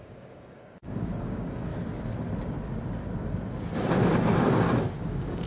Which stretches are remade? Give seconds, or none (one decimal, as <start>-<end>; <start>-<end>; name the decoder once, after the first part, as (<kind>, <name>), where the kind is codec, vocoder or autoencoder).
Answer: 0.0-1.7 (codec, DAC); 5.0-5.5

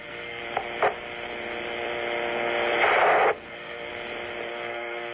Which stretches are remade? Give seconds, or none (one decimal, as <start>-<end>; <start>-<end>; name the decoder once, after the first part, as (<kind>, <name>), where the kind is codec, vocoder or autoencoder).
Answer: 0.0-0.4 (codec, SNAC); 3.5-3.9; 4.5-5.1

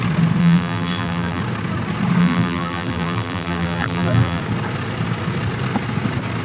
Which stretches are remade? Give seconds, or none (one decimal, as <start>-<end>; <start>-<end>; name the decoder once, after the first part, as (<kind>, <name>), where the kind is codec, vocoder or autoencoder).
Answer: 0.4-1.4 (vocoder, BigVGAN v2); 2.2-4.4